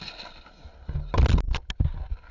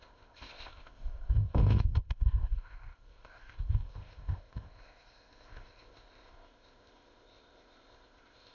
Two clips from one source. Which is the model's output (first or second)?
second